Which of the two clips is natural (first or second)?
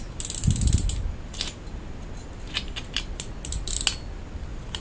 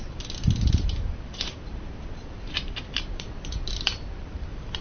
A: first